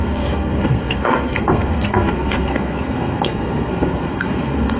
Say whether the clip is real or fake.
fake